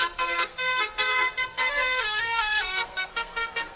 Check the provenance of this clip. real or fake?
fake